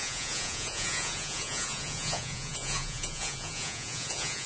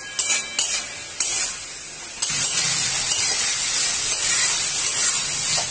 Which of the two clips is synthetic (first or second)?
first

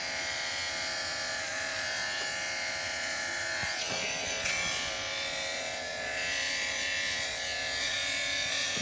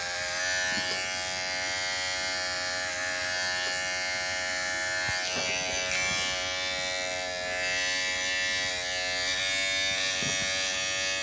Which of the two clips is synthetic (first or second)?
first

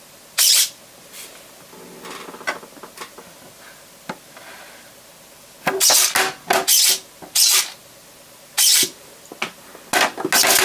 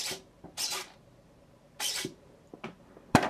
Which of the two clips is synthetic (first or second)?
second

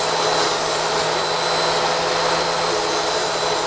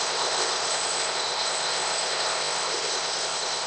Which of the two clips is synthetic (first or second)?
second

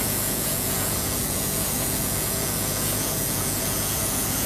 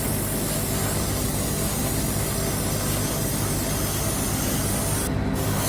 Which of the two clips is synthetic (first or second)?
first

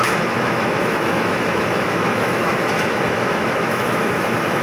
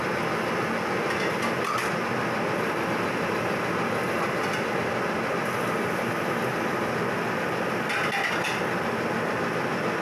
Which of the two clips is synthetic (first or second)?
first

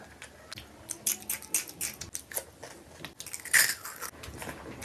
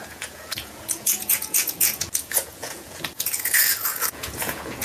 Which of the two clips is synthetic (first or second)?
second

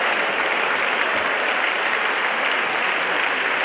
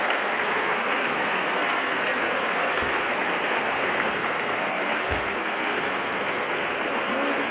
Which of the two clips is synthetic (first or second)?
second